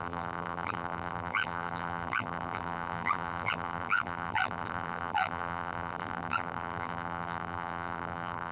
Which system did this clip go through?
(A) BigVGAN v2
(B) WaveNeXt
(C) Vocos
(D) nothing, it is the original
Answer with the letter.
A